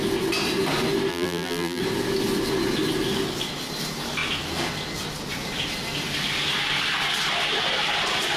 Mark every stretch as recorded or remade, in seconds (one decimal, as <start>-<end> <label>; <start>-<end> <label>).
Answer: 0.0-1.1 recorded; 1.1-1.8 remade; 1.8-8.4 recorded